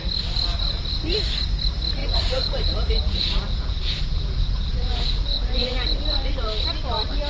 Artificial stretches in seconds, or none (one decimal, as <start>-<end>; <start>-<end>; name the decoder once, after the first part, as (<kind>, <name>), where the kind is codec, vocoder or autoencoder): 2.0-6.0 (vocoder, Vocos)